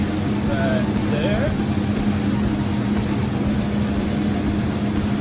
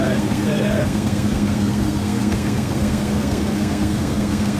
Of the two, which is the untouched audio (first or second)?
first